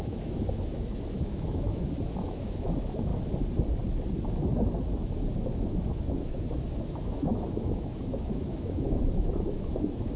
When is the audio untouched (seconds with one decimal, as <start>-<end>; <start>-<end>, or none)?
3.1-5.4